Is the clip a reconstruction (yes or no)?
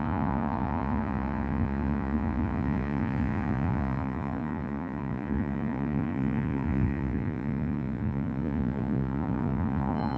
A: yes